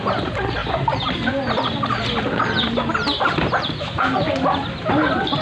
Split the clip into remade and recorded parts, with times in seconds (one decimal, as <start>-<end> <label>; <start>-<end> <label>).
0.0-5.4 recorded